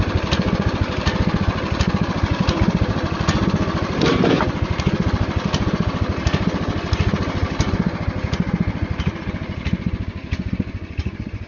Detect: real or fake real